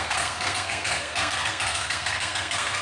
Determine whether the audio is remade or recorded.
remade